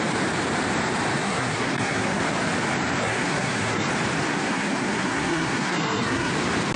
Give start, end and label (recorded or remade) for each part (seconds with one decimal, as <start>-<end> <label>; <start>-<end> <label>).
0.0-1.2 recorded; 1.2-2.2 remade; 2.2-3.0 recorded; 3.0-3.9 remade; 3.9-4.3 recorded; 4.3-6.3 remade; 6.3-6.8 recorded